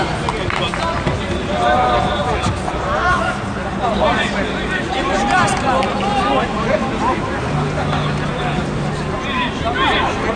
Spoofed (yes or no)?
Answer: no